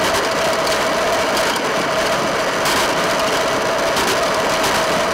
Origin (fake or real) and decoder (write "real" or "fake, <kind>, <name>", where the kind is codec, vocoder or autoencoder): real